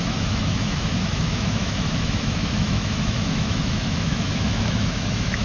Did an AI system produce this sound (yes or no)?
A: yes